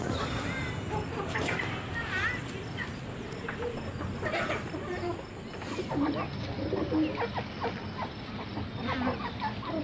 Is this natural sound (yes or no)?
yes